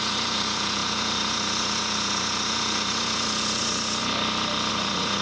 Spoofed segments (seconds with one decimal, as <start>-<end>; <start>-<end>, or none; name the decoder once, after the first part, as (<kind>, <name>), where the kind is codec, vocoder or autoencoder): 0.0-4.0 (vocoder, Vocos); 4.7-5.2